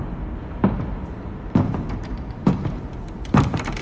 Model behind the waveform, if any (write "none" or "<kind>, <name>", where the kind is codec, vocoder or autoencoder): vocoder, BigVGAN v2